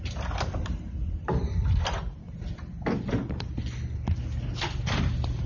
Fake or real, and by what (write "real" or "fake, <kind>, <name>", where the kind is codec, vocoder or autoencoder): real